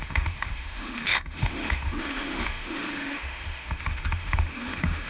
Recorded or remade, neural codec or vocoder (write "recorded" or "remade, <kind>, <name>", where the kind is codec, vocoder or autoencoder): remade, autoencoder, DAC-VAE